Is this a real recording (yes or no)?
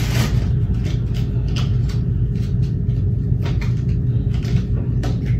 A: yes